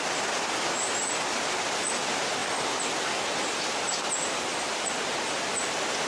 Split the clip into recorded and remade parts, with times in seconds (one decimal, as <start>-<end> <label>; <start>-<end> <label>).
0.0-6.1 recorded

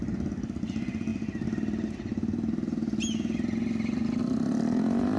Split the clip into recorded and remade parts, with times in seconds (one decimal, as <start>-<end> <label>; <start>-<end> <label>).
0.0-5.2 recorded

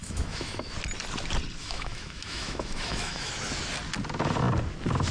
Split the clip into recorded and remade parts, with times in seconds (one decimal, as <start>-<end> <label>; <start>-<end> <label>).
0.0-0.7 remade; 0.7-1.6 recorded; 1.6-3.3 remade; 3.3-5.1 recorded

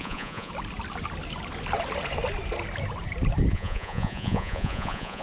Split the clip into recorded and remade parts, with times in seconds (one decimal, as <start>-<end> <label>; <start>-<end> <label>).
0.0-0.5 remade; 0.5-3.5 recorded; 3.5-5.2 remade

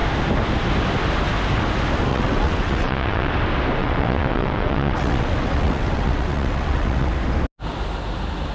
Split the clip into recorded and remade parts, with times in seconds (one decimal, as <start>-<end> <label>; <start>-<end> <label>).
0.0-2.1 recorded; 2.1-3.3 remade; 3.3-3.8 recorded; 3.8-7.1 remade; 7.1-8.5 recorded

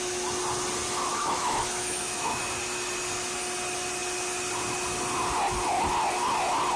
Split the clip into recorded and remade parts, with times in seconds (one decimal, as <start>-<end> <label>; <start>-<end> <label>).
0.0-1.1 recorded; 1.1-2.4 remade; 2.4-6.8 recorded